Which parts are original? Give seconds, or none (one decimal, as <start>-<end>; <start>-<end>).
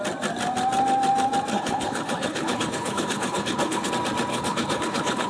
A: 0.0-1.5; 3.9-4.3